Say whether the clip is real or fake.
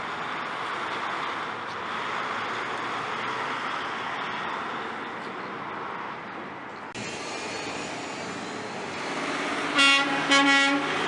real